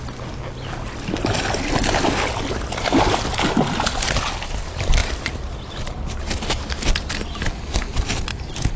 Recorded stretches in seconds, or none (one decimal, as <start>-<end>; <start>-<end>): 0.0-8.8